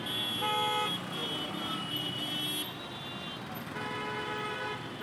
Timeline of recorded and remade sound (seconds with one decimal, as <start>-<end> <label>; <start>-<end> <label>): 0.0-5.0 recorded